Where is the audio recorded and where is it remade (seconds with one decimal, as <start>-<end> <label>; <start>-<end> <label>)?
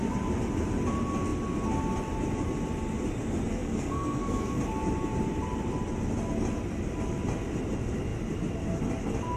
0.0-3.5 recorded; 3.5-4.6 remade; 4.6-9.4 recorded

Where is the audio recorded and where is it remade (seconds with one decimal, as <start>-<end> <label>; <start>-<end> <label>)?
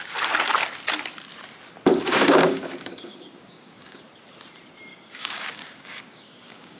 0.0-1.9 recorded; 1.9-4.0 remade; 4.0-4.9 recorded; 4.9-6.8 remade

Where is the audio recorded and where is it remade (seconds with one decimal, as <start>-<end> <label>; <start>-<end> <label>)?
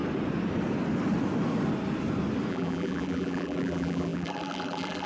0.0-2.5 recorded; 2.5-5.1 remade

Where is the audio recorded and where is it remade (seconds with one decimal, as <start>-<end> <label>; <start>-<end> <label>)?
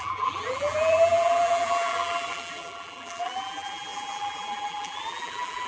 0.0-5.7 remade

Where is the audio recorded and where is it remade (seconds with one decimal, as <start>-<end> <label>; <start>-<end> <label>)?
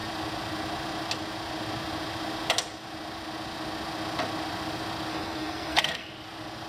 0.0-5.1 recorded; 5.1-6.1 remade; 6.1-6.7 recorded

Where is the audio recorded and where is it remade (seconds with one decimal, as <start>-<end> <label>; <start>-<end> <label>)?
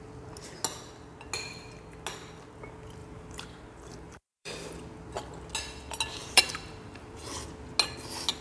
0.0-3.0 recorded; 3.0-4.7 remade; 4.7-6.2 recorded; 6.2-7.2 remade; 7.2-8.4 recorded